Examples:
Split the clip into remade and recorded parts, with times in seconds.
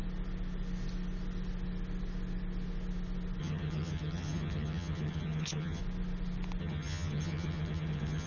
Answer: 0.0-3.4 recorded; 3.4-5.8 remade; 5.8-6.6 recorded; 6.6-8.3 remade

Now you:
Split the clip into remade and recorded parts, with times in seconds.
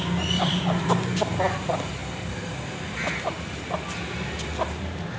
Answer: 0.0-5.2 recorded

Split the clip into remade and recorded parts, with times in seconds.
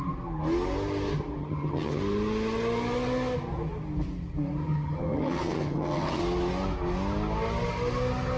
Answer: 0.0-1.4 recorded; 1.4-2.0 remade; 2.0-4.6 recorded; 4.6-6.2 remade; 6.2-8.4 recorded